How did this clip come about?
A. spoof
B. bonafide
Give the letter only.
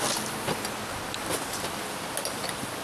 B